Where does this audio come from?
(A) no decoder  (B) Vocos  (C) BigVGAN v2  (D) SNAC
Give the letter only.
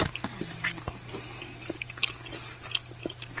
A